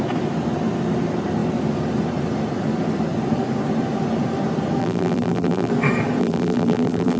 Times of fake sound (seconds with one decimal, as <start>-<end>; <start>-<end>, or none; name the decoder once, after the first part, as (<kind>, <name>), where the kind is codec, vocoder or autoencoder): 4.8-5.7 (vocoder, BigVGAN v2); 6.2-7.2